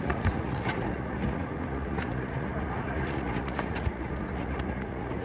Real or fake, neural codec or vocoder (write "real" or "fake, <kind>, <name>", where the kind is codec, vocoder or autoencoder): fake, vocoder, Vocos